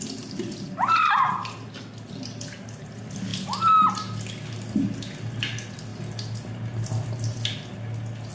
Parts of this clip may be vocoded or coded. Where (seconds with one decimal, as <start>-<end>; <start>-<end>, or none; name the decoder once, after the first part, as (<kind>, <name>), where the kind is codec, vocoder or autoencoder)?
none